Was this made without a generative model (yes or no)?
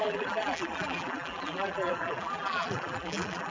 no